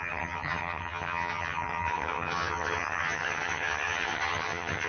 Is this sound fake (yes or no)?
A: yes